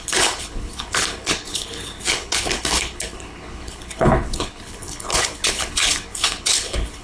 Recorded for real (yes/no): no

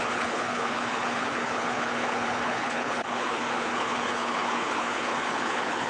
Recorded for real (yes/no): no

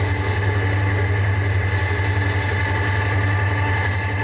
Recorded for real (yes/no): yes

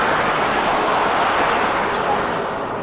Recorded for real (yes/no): yes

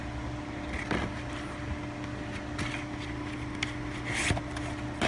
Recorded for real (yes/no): yes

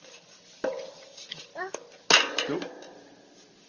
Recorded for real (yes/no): yes